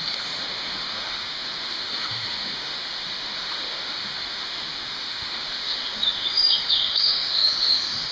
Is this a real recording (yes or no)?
no